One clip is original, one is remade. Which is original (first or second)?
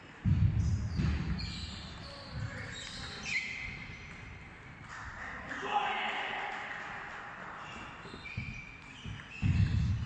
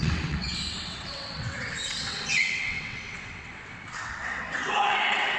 first